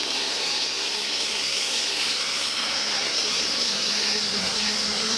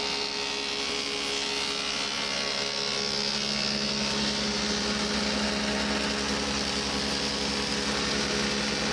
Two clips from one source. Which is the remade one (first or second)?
first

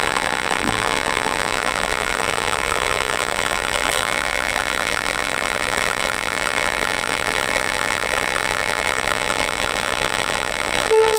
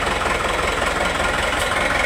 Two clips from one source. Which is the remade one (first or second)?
first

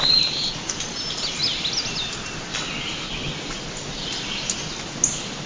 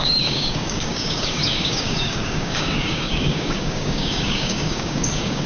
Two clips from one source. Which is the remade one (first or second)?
second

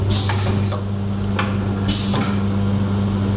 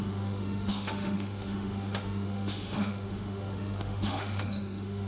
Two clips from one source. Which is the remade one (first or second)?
second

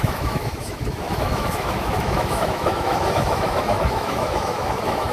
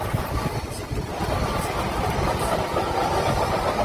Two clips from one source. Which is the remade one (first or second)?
first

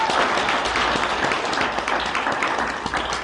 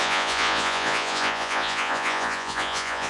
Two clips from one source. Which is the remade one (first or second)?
second